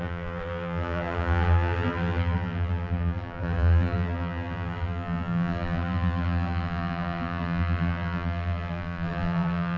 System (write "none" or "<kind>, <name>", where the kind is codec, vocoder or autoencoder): vocoder, BigVGAN v2